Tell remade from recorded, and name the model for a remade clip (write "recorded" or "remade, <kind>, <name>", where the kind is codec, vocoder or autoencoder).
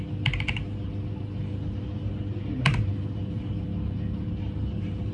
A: recorded